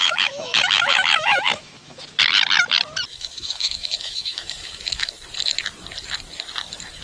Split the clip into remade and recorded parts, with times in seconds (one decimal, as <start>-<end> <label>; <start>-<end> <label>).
0.0-2.0 remade; 2.0-3.1 recorded; 3.1-5.1 remade; 5.1-7.0 recorded